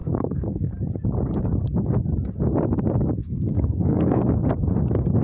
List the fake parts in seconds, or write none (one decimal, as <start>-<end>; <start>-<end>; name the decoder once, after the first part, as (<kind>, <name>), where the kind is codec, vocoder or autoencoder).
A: 0.0-0.7 (codec, SNAC); 3.2-4.2

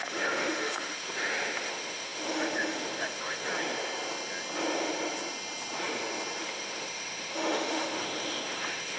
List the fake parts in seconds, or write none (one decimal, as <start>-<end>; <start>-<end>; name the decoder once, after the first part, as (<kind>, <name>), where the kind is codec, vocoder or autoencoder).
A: 0.0-3.5 (autoencoder, DAC-VAE); 6.4-9.0

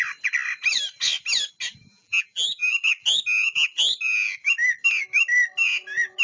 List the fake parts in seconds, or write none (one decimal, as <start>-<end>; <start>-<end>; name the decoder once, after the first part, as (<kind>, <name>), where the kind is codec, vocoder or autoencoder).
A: 1.9-2.7 (vocoder, BigVGAN v2)

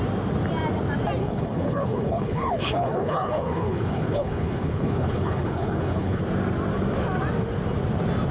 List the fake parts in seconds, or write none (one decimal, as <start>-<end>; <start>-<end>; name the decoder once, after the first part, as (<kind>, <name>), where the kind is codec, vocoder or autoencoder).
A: 1.2-6.2 (codec, HILCodec)

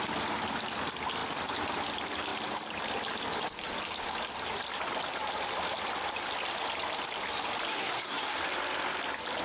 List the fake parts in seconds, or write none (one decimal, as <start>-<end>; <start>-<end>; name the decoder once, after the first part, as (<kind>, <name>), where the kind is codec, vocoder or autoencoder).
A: 7.7-8.4 (codec, SNAC)

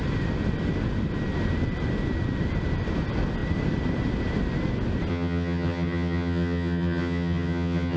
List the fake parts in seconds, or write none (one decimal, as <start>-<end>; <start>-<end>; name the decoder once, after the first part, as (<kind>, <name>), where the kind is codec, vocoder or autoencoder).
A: 5.1-8.0 (vocoder, HiFi-GAN)

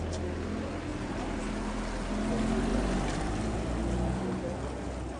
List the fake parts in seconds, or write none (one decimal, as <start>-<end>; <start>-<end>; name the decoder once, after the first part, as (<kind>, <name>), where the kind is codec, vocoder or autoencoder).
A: 0.9-1.5 (vocoder, BigVGAN v2); 2.7-3.7

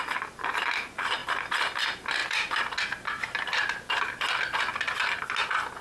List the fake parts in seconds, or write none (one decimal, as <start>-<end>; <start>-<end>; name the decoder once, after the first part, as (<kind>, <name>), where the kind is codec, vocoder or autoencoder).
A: none